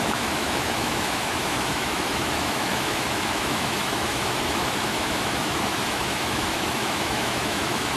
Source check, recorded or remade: remade